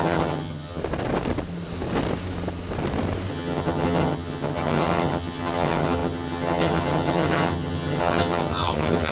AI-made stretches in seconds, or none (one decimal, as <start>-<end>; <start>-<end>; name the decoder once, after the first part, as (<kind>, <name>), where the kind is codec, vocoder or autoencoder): 0.0-0.8 (vocoder, HiFi-GAN); 3.3-9.1